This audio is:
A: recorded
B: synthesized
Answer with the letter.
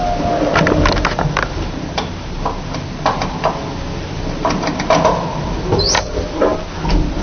A